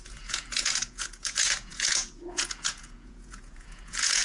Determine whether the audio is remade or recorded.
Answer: remade